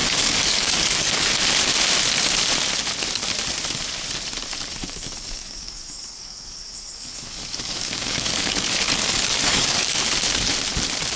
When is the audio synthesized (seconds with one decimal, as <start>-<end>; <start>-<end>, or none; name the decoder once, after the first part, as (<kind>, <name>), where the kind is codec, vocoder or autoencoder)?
0.0-1.4 (codec, DAC); 4.8-10.0